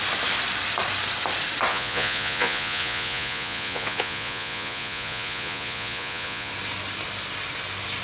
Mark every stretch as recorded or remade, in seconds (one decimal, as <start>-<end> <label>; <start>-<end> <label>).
0.0-1.7 recorded; 1.7-6.5 remade; 6.5-8.0 recorded